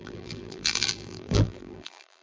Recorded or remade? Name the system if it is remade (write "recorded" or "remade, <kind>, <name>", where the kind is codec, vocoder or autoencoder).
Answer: remade, vocoder, BigVGAN v2